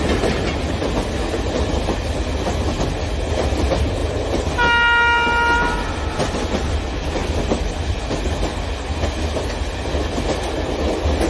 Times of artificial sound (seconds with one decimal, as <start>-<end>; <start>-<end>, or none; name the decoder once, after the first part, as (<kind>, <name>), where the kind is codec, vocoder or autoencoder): none